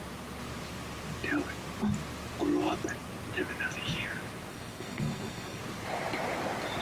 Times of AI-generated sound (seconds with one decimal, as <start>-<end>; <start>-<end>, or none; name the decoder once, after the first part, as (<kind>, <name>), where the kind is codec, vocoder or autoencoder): 4.5-5.6 (codec, SNAC)